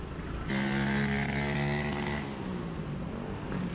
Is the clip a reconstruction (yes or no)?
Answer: no